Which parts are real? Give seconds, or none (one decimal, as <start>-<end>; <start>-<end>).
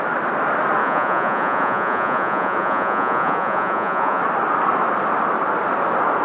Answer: 0.0-0.8; 4.2-6.2